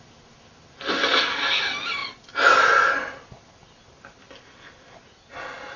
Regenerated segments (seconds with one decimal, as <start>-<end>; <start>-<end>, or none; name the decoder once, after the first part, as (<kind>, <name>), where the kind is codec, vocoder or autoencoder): none